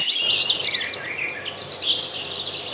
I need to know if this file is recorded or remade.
recorded